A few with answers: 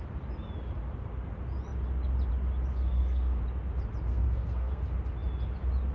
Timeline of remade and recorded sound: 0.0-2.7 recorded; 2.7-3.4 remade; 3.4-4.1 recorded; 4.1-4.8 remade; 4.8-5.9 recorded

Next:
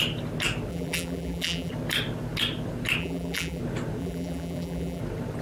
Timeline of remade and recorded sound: 0.0-0.7 recorded; 0.7-1.7 remade; 1.7-3.0 recorded; 3.0-3.6 remade; 3.6-4.0 recorded; 4.0-5.0 remade; 5.0-5.4 recorded

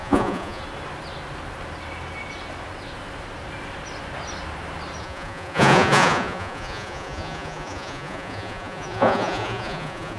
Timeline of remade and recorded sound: 0.0-0.6 remade; 0.6-5.0 recorded; 5.0-10.2 remade

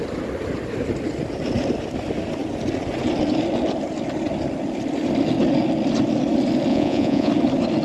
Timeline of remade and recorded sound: 0.0-6.7 recorded; 6.7-7.3 remade; 7.3-7.8 recorded